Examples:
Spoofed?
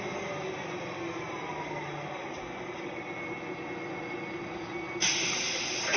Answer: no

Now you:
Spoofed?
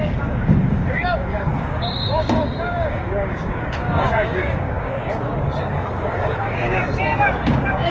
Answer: yes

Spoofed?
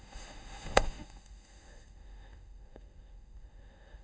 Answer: yes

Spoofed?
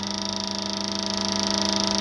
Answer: no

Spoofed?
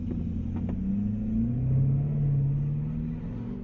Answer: no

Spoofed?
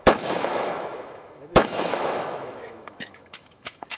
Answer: yes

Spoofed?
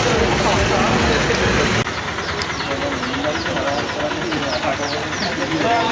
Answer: no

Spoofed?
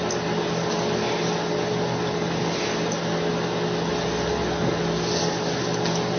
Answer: no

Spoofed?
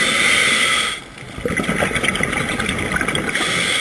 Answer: no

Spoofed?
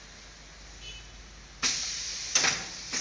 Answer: no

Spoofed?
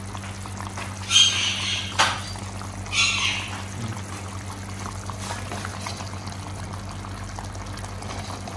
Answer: no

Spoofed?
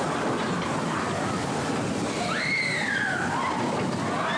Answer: no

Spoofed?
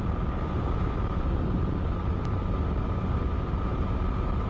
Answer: yes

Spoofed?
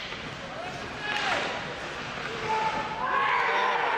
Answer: no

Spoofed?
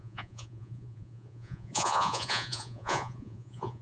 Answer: yes